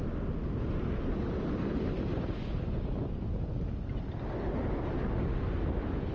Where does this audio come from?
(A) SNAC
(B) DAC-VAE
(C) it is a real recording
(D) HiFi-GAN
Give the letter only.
C